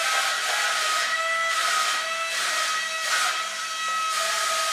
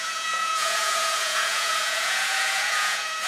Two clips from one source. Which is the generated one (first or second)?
second